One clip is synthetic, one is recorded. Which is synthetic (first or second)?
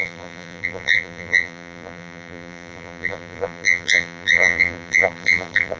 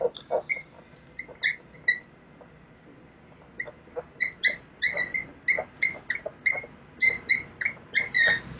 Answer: first